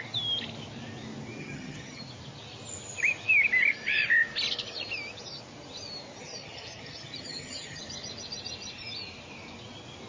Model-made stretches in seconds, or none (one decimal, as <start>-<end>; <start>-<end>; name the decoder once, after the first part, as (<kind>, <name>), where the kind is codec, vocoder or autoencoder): 1.4-2.0 (vocoder, HiFi-GAN); 6.2-7.8